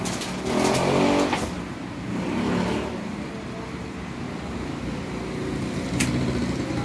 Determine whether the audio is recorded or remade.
recorded